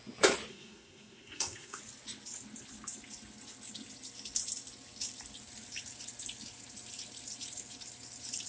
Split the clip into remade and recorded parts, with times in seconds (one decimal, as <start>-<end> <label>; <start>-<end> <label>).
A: 0.0-0.5 recorded; 0.5-1.8 remade; 1.8-8.5 recorded